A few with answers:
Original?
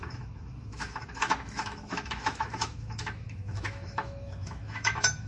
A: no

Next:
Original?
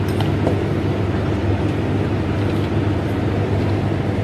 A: yes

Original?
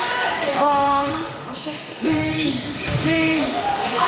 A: no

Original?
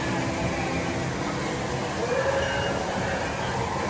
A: yes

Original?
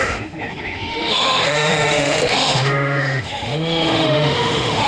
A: no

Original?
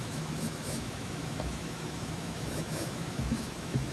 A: no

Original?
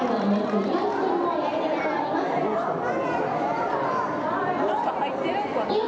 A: yes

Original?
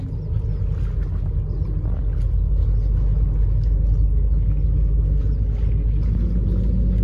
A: yes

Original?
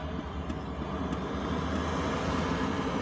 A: yes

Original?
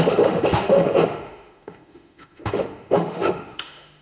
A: no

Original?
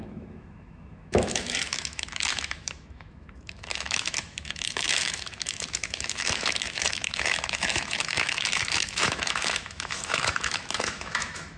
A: no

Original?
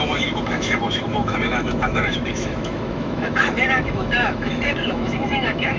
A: no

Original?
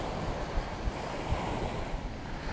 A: yes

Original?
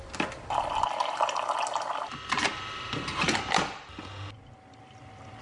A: yes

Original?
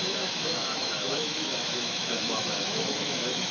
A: no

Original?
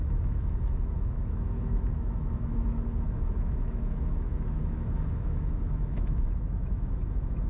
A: no